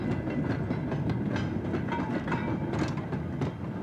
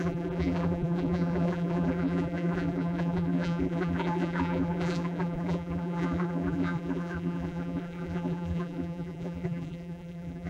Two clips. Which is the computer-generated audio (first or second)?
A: second